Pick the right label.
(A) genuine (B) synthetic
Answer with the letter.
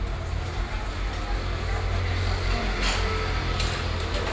A